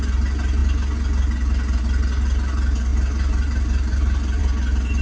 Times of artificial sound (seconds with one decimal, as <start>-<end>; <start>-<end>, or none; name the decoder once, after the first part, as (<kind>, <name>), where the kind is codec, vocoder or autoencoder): 2.9-4.4 (vocoder, BigVGAN v2)